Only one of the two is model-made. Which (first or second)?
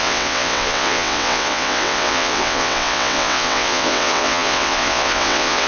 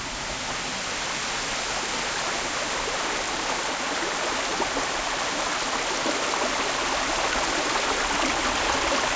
first